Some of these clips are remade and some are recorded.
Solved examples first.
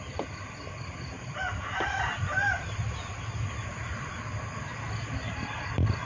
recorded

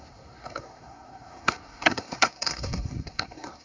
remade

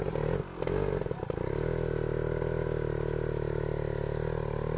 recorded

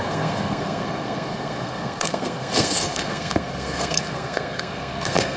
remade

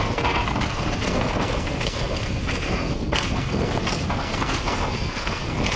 remade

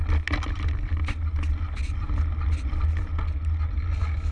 recorded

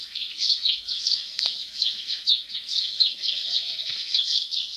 remade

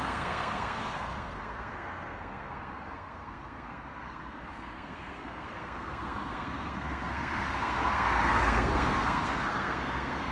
remade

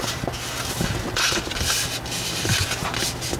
recorded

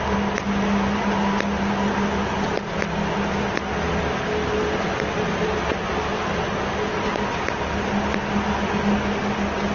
recorded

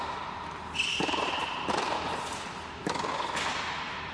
recorded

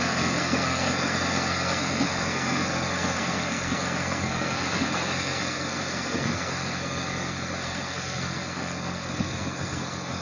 remade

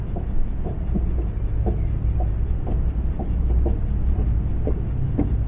recorded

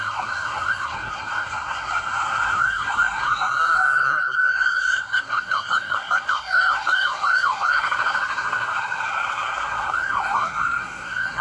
remade